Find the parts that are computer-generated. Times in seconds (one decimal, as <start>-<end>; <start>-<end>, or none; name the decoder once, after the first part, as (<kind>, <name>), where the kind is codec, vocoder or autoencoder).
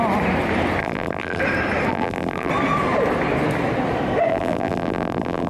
0.8-1.4 (vocoder, BigVGAN v2); 1.9-2.5; 4.3-5.5